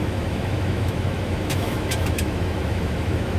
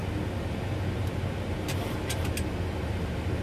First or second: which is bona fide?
second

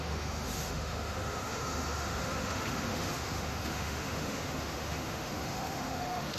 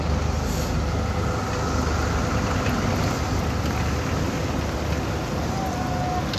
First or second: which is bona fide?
second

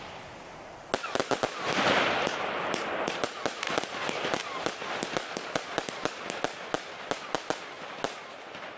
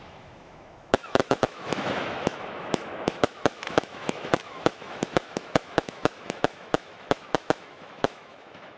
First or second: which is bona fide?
first